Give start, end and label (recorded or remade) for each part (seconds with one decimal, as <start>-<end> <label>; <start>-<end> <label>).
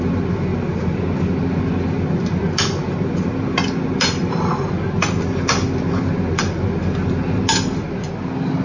0.0-8.6 recorded